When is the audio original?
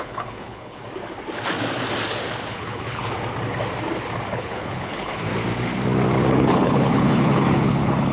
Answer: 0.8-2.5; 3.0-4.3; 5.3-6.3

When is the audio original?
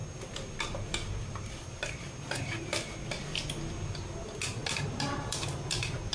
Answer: 0.0-6.1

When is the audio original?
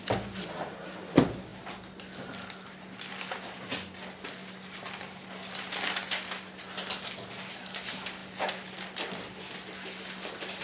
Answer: 0.0-10.6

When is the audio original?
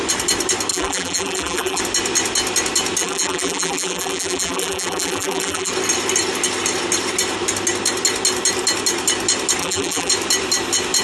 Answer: 0.0-0.7; 1.8-3.0; 5.7-9.6; 10.1-11.0